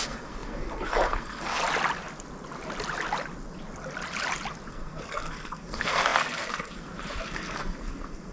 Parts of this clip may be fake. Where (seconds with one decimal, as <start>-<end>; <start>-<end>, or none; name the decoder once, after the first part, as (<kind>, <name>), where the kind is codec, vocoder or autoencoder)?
0.0-1.6 (codec, SNAC); 4.7-8.3